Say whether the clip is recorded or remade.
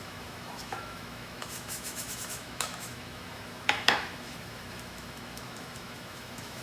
remade